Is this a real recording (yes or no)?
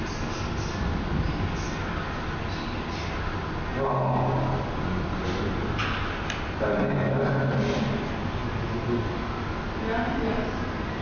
yes